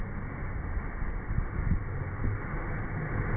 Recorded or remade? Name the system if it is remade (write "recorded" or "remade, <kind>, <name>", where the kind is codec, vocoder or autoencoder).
recorded